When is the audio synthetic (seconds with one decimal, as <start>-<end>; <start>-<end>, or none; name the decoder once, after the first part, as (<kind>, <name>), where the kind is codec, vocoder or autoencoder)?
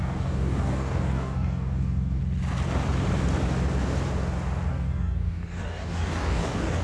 0.0-2.2 (codec, DAC); 4.7-6.8